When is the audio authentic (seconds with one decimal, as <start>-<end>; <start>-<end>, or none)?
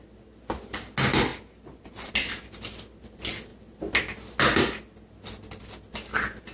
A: 0.0-6.5